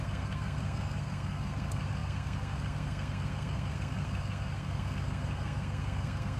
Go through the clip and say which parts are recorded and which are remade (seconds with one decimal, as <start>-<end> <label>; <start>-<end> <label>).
0.0-6.4 remade